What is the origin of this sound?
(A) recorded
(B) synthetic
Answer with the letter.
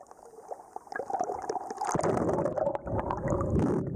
A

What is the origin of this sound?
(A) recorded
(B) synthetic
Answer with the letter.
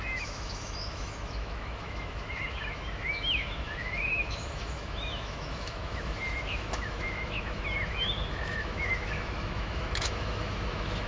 B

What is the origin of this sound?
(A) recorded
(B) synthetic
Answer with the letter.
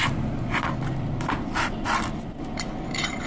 A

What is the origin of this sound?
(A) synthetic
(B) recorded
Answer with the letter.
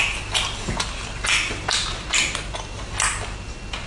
B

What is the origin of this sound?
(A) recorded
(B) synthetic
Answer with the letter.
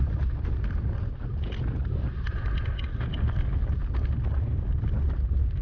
A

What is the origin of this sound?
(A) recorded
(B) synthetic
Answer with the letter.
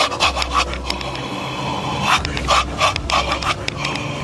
A